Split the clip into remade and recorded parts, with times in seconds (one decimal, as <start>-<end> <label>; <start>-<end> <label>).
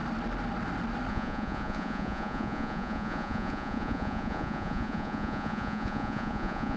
0.0-1.1 recorded; 1.1-6.8 remade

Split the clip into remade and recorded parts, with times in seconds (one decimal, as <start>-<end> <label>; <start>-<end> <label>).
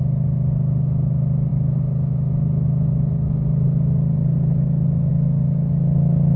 0.0-6.4 recorded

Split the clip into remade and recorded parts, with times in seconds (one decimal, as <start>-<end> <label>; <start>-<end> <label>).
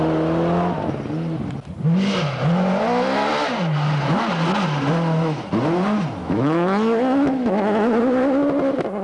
0.0-6.2 recorded; 6.2-8.0 remade; 8.0-9.0 recorded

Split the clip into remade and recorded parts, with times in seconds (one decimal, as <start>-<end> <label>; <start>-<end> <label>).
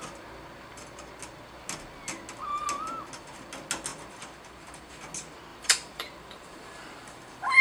0.0-5.5 recorded; 5.5-7.1 remade; 7.1-7.6 recorded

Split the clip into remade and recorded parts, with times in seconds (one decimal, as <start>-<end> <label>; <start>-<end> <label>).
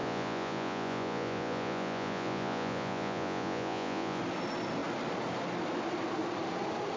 0.0-4.2 remade; 4.2-7.0 recorded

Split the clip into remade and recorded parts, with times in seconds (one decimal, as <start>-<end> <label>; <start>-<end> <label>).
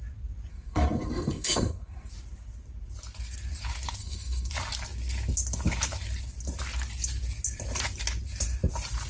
0.0-0.5 recorded; 0.5-2.1 remade; 2.1-4.0 recorded; 4.0-4.5 remade; 4.5-9.1 recorded